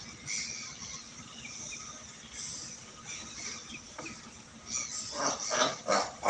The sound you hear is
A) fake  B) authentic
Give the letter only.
B